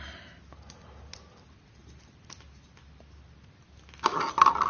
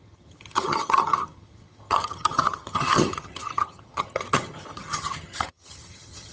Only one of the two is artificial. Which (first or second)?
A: second